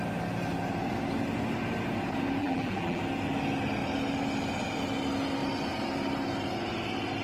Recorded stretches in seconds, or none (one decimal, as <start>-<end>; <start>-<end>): 0.0-2.4; 3.0-7.2

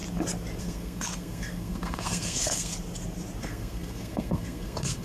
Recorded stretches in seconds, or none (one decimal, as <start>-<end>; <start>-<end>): 0.0-0.6; 2.7-3.4

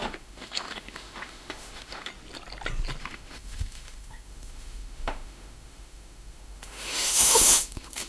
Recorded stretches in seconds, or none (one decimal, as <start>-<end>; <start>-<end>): 2.1-3.0

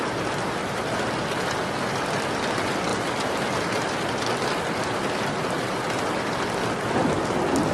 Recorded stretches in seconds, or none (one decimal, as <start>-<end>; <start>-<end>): 0.0-7.7

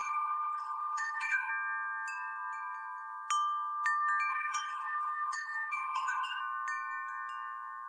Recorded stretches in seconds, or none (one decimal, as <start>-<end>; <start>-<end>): 1.5-4.3; 6.4-7.9

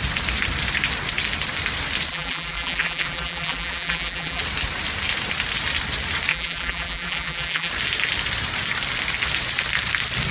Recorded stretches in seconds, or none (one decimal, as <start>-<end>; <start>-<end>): 0.0-2.1; 4.4-6.3; 7.7-10.3